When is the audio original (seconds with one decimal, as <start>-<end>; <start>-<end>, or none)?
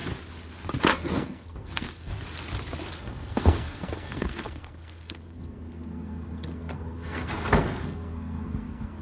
0.0-0.8; 2.1-3.0